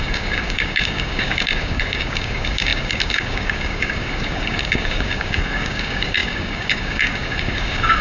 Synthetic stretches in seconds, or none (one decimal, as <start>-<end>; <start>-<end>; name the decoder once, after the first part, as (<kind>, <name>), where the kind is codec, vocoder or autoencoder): 0.0-8.0 (codec, DAC)